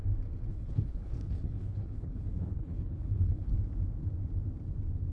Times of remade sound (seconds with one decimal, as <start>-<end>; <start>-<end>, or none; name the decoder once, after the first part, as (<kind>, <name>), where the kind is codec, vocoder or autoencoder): 0.5-3.5 (codec, HILCodec)